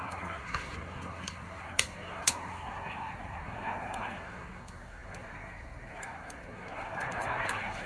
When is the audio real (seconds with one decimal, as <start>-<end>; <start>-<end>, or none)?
none